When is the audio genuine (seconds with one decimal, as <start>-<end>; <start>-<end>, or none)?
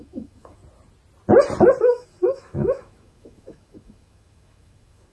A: 0.6-1.8